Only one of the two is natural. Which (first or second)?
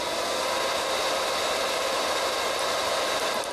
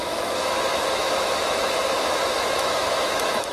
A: first